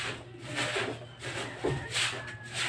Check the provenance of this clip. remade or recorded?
recorded